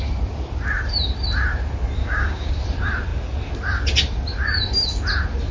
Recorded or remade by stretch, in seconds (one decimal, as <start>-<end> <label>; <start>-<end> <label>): 0.0-2.0 recorded; 2.0-2.5 remade; 2.5-5.5 recorded